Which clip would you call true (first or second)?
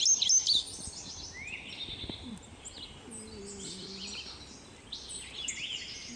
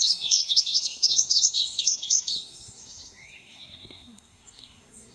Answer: first